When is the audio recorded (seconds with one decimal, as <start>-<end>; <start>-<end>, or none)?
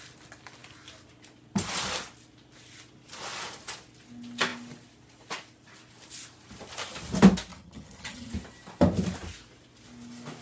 0.0-7.5; 8.3-10.4